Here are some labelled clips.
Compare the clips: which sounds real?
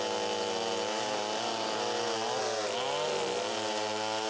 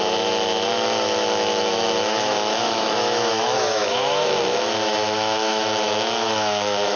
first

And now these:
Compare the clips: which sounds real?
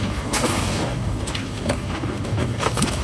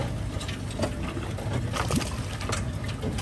second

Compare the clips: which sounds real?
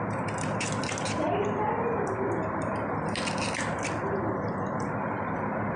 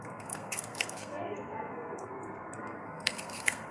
first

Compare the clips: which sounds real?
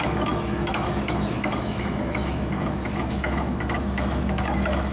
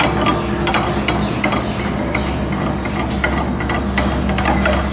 second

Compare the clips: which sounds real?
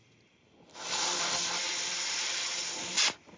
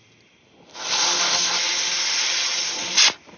second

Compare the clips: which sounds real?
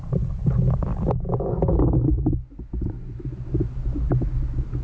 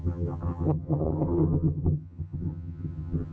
first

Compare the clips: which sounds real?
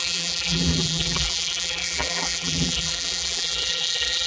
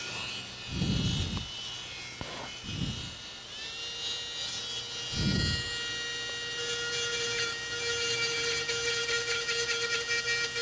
second